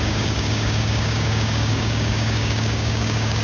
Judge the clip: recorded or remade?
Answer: remade